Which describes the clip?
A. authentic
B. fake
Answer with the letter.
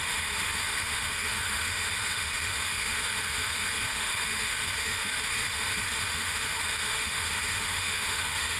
B